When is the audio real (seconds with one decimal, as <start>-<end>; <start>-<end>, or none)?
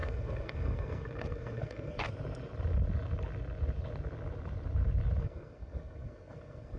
2.1-5.2